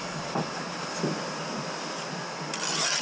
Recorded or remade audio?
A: recorded